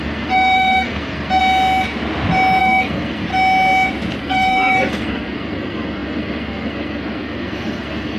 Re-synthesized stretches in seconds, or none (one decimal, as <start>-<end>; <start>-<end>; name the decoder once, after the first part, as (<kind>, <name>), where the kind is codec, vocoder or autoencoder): 0.0-1.4 (codec, SNAC); 2.6-3.3; 4.2-8.2